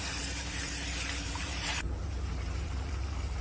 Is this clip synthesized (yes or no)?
yes